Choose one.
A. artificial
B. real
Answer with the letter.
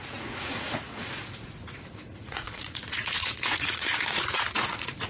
A